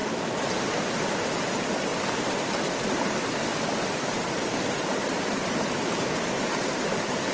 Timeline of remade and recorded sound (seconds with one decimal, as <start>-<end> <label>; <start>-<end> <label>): 0.0-0.7 recorded; 0.7-1.9 remade; 1.9-4.1 recorded; 4.1-7.3 remade